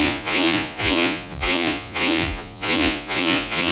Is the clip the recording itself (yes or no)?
no